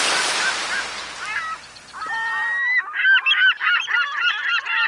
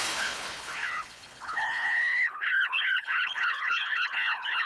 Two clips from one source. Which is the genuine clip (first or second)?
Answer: first